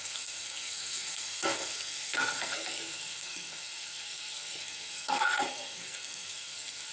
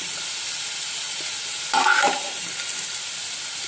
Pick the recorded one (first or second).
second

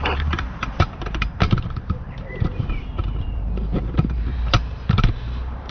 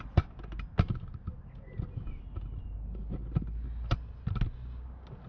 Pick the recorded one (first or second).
second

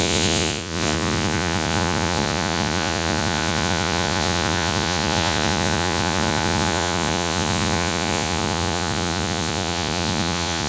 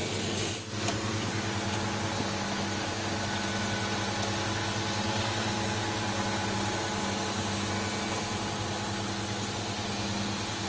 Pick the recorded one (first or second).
second